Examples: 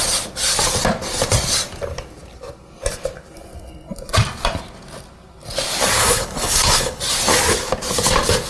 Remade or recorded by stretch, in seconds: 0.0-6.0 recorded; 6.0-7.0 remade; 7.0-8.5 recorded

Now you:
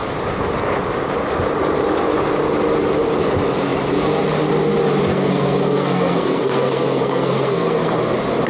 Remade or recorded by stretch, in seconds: 0.0-5.1 recorded; 5.1-8.0 remade; 8.0-8.5 recorded